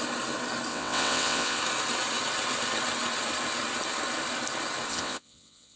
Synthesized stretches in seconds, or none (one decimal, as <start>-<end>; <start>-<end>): 0.7-1.6; 4.9-5.8